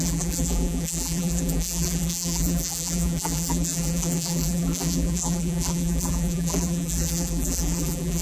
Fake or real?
fake